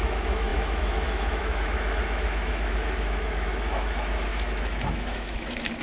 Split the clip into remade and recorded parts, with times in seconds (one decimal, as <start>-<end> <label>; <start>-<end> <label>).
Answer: 0.0-5.8 remade